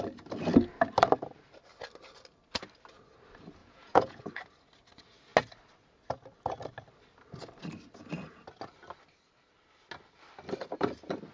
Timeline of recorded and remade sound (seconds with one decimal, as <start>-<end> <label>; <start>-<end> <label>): 0.0-3.6 recorded; 3.6-4.2 remade; 4.2-11.3 recorded